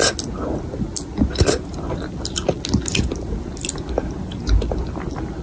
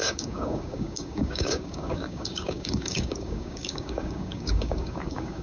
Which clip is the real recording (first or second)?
first